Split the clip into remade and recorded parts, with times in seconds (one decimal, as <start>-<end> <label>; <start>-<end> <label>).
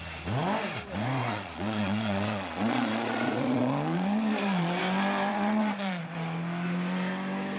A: 0.0-1.2 recorded; 1.2-4.8 remade; 4.8-5.3 recorded; 5.3-6.0 remade; 6.0-7.6 recorded